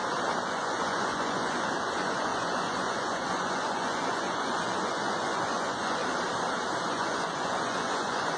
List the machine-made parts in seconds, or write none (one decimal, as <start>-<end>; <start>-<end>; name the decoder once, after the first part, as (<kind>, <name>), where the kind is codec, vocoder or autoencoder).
0.5-6.0 (vocoder, Vocos); 6.9-8.4